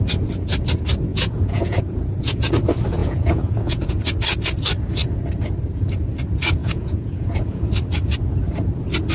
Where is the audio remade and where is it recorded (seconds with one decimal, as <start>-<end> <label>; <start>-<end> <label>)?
0.0-1.1 recorded; 1.1-2.5 remade; 2.5-3.0 recorded; 3.0-4.0 remade; 4.0-6.6 recorded; 6.6-7.7 remade; 7.7-9.1 recorded